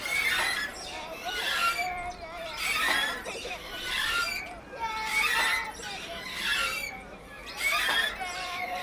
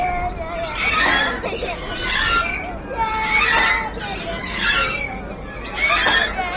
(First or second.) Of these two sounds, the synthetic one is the first